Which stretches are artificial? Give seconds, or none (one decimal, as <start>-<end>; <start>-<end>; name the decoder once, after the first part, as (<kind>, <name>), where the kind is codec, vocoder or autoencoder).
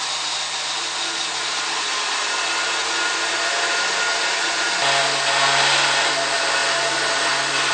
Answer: none